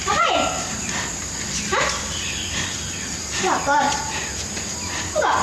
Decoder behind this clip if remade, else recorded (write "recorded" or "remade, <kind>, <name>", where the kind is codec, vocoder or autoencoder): recorded